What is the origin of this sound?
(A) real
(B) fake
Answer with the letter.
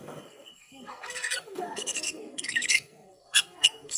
B